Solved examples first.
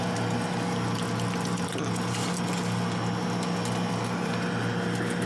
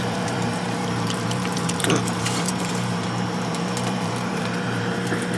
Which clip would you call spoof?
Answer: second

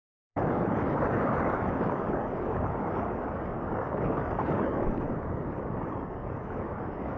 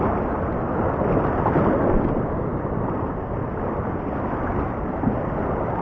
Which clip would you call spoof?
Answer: first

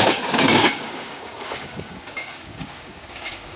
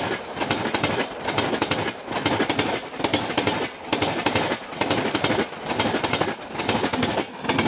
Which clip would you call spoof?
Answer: first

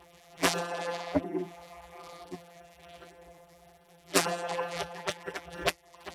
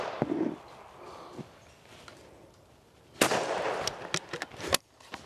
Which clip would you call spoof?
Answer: first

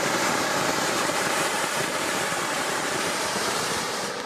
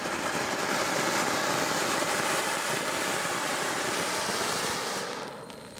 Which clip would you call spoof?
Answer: first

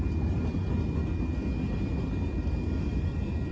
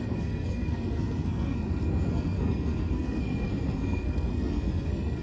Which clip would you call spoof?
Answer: second